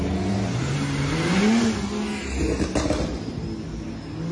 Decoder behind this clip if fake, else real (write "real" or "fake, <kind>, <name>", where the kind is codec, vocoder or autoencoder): real